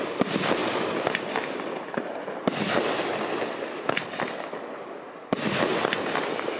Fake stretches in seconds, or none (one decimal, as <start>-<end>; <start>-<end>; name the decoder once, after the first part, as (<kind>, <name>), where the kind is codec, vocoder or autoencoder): none